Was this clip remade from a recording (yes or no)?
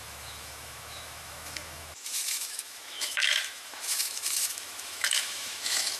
yes